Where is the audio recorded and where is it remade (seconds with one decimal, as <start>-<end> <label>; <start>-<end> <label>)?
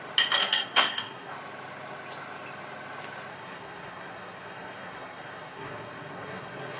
0.0-0.4 recorded; 0.4-1.3 remade; 1.3-3.3 recorded; 3.3-6.8 remade